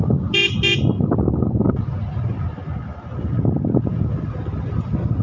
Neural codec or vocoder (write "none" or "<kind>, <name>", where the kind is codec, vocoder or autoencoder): none